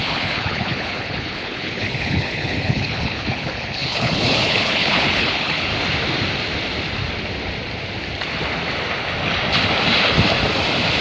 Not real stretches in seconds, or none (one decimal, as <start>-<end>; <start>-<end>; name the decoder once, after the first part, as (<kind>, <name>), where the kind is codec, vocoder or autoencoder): 0.0-5.7 (codec, HILCodec)